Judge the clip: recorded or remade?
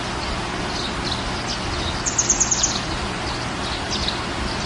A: recorded